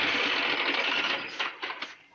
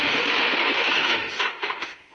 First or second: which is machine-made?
second